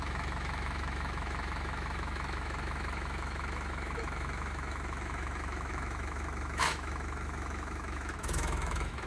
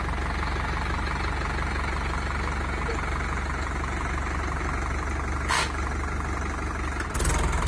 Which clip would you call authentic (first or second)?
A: second